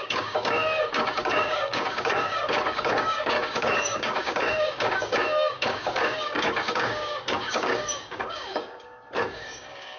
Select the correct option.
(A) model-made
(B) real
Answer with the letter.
A